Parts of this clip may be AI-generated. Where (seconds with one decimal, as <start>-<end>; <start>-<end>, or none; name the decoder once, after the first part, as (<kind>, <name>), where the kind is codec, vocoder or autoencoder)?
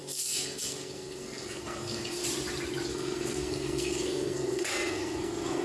0.0-2.2 (codec, SNAC); 2.9-5.6